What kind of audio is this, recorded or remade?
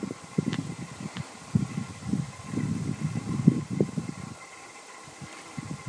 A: recorded